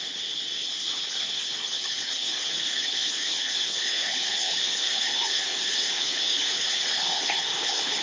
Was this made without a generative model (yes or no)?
no